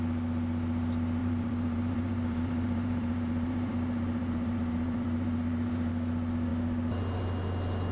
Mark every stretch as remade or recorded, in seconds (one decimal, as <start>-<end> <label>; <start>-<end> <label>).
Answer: 0.0-1.2 recorded; 1.2-5.9 remade; 5.9-7.9 recorded